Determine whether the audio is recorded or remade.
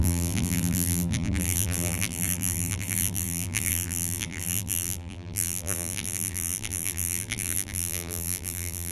remade